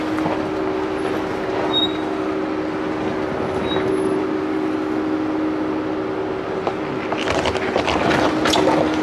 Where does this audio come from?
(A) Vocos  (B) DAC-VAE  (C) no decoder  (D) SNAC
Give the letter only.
C